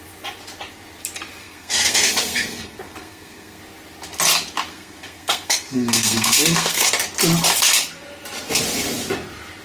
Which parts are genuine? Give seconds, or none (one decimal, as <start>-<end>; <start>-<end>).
0.0-1.4; 3.6-4.7; 6.9-9.6